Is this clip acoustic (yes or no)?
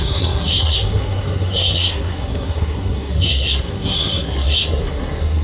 no